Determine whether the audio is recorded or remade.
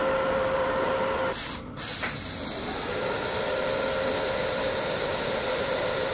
recorded